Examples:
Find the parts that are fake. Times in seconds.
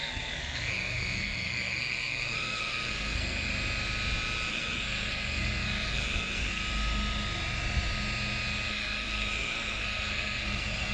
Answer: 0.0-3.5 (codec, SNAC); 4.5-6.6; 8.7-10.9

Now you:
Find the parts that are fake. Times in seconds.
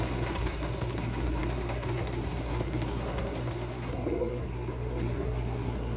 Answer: 0.0-6.0 (codec, SNAC)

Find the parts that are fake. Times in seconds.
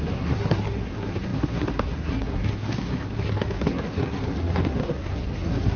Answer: 0.0-5.8 (codec, SNAC)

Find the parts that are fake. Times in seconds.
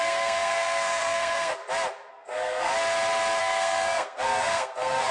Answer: 0.0-1.6 (codec, SNAC); 2.1-2.7; 3.4-5.1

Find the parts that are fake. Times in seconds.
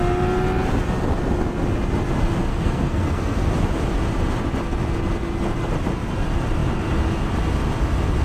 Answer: 2.5-3.5 (codec, SNAC)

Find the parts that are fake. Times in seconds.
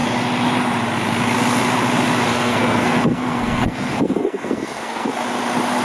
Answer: 2.3-5.1 (codec, SNAC)